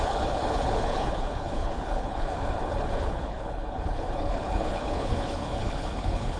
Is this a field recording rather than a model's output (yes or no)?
no